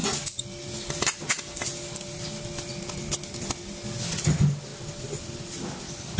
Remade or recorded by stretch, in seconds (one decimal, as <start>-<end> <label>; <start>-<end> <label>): 0.0-6.2 recorded